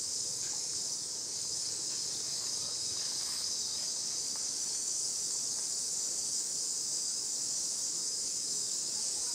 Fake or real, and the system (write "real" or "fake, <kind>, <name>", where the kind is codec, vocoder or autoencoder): fake, codec, DAC